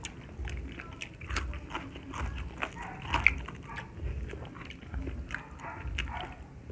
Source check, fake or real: real